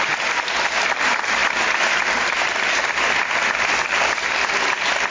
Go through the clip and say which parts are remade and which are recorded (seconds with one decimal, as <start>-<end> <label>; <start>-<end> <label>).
0.0-5.1 recorded